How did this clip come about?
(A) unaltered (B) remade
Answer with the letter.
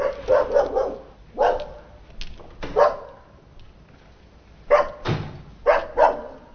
A